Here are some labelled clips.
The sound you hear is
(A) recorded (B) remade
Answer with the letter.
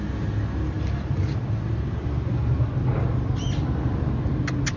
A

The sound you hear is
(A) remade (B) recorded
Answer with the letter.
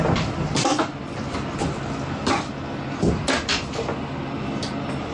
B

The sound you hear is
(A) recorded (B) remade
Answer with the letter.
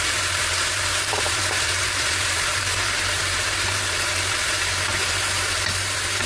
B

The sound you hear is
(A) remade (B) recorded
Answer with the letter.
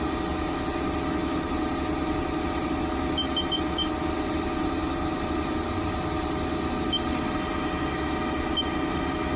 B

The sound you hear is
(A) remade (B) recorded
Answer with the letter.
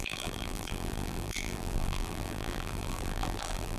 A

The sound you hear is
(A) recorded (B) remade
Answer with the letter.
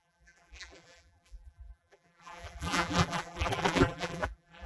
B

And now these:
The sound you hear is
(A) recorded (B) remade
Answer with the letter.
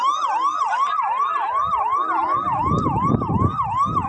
A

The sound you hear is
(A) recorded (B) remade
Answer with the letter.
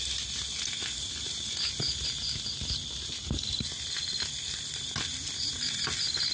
A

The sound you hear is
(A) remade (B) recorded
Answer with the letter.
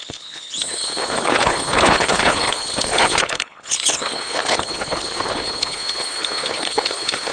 A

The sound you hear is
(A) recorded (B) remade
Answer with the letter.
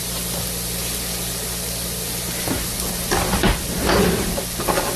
A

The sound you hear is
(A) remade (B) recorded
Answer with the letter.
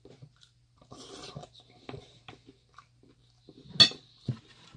B